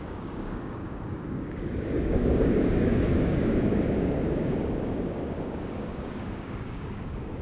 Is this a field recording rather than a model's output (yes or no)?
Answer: no